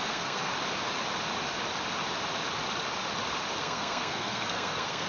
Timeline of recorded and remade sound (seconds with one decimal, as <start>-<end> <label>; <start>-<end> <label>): 0.0-0.5 remade; 0.5-3.6 recorded; 3.6-5.1 remade